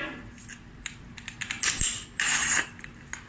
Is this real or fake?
real